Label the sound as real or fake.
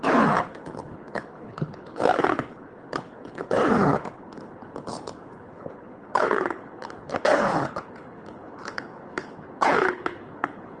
fake